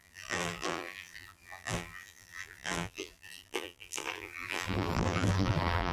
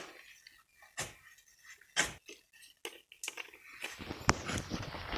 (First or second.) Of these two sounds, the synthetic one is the first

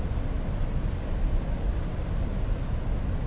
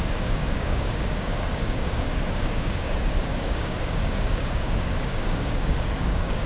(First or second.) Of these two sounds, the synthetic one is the second